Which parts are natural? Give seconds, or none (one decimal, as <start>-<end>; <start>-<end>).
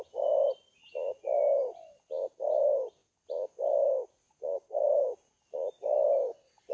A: 0.0-6.7